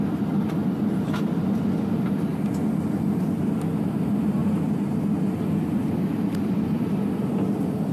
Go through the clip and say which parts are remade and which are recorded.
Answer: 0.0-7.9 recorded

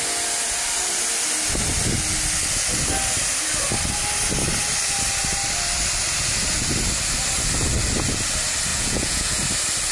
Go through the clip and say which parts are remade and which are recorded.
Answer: 0.0-8.7 recorded; 8.7-9.4 remade; 9.4-9.9 recorded

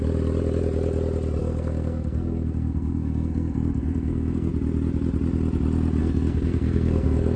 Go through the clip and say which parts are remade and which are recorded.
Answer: 0.0-1.4 recorded; 1.4-4.5 remade; 4.5-6.0 recorded; 6.0-7.4 remade

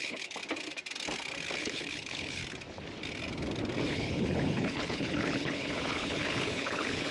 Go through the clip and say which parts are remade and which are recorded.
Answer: 0.0-0.4 remade; 0.4-1.6 recorded; 1.6-2.4 remade; 2.4-3.9 recorded; 3.9-7.1 remade

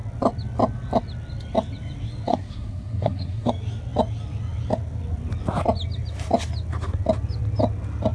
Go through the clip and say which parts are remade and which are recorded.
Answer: 0.0-2.3 recorded; 2.3-3.5 remade; 3.5-8.1 recorded